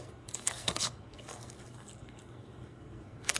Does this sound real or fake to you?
fake